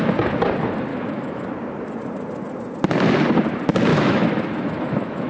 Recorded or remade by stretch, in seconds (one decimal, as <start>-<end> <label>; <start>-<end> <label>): 0.0-0.9 recorded; 0.9-1.5 remade; 1.5-3.9 recorded; 3.9-5.3 remade